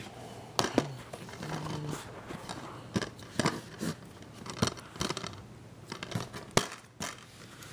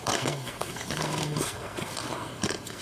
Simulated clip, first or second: second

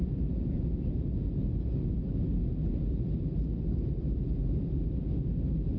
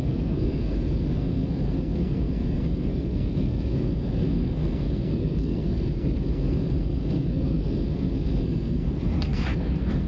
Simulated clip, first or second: second